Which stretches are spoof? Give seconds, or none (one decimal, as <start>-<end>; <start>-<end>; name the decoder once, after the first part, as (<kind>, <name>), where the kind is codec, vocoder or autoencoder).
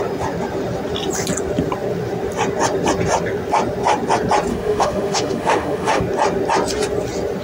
4.5-6.0 (autoencoder, DAC-VAE)